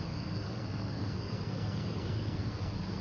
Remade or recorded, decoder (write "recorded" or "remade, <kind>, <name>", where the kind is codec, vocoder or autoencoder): remade, codec, SNAC